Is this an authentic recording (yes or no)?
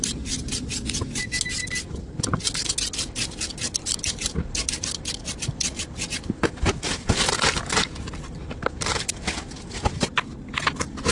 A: yes